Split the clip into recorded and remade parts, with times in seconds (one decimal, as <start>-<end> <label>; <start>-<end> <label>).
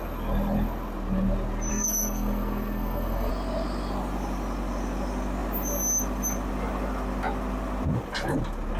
0.0-1.7 recorded; 1.7-3.3 remade; 3.3-8.8 recorded